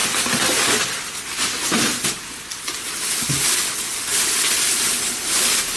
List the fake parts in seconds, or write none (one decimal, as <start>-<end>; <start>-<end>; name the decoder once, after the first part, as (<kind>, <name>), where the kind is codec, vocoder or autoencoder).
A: none